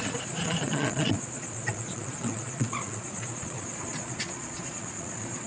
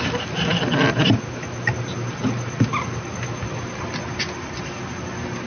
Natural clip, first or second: second